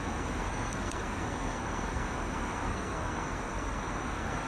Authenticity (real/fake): fake